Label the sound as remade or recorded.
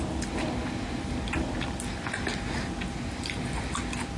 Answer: recorded